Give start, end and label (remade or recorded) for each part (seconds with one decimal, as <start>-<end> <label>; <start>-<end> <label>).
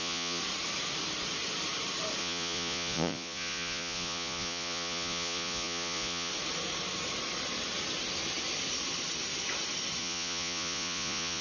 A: 0.0-0.4 remade; 0.4-2.2 recorded; 2.2-6.3 remade; 6.3-10.0 recorded; 10.0-11.4 remade